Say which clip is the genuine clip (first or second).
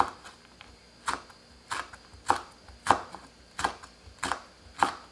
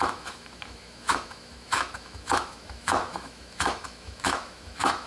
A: first